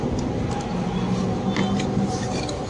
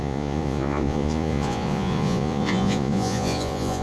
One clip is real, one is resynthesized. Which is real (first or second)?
first